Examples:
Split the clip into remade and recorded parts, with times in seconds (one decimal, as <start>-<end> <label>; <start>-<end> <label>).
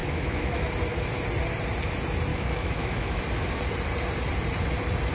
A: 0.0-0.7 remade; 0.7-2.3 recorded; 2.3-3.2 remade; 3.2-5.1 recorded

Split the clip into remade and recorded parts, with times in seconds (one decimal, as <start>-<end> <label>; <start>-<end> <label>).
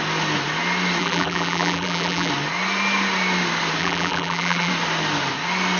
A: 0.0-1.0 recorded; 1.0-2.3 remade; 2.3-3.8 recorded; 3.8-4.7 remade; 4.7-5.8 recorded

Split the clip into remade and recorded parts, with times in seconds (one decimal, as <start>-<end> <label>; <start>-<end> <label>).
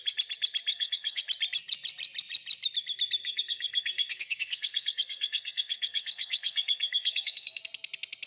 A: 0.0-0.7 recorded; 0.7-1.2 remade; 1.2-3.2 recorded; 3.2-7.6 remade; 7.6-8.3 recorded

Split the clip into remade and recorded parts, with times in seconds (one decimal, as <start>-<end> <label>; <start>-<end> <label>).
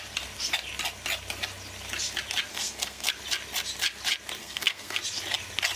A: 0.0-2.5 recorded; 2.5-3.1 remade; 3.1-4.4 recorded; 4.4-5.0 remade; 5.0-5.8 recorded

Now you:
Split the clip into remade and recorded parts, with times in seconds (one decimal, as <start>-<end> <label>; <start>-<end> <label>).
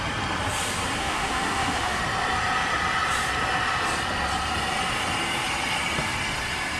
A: 0.0-1.0 recorded; 1.0-2.0 remade; 2.0-6.8 recorded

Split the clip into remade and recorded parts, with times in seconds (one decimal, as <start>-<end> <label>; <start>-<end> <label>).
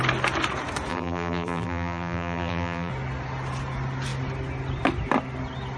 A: 0.0-0.9 recorded; 0.9-2.9 remade; 2.9-5.8 recorded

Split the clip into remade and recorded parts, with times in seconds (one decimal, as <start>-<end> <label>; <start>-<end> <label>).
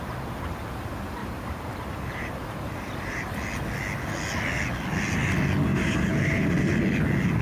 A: 0.0-1.2 recorded; 1.2-3.3 remade; 3.3-5.7 recorded; 5.7-6.5 remade; 6.5-7.4 recorded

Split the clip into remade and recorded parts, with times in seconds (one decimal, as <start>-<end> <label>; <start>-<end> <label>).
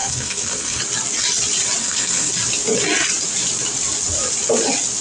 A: 0.0-0.8 remade; 0.8-1.8 recorded; 1.8-2.3 remade; 2.3-5.0 recorded